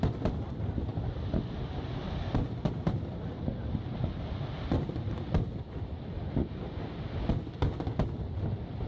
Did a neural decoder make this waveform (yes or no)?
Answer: no